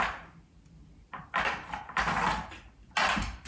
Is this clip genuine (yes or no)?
yes